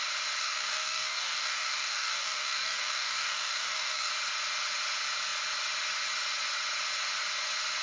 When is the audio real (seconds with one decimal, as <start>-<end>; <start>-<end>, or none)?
0.0-0.4; 4.1-7.8